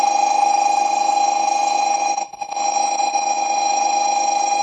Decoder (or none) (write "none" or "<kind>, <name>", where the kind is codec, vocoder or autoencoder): autoencoder, DAC-VAE